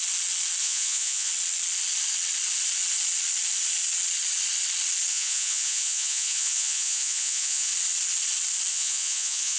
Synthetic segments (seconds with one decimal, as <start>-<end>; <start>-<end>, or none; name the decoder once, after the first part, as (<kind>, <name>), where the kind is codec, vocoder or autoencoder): 0.6-1.3 (vocoder, Vocos); 5.1-7.7; 8.7-9.6